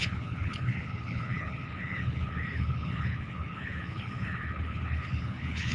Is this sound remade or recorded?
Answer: remade